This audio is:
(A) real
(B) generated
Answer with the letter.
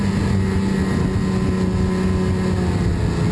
A